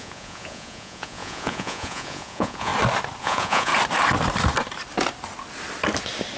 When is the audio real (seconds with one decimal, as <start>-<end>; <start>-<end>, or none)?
2.7-3.2; 3.7-6.4